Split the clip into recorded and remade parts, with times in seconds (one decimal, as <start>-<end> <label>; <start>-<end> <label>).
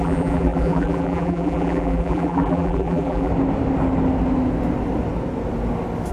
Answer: 0.0-3.3 remade; 3.3-6.1 recorded